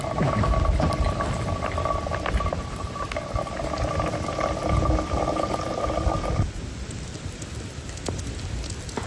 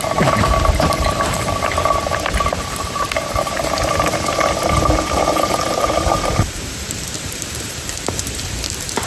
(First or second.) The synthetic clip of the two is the second